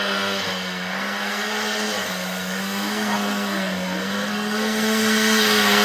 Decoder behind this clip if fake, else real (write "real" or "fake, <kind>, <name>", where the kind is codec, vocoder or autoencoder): fake, codec, SNAC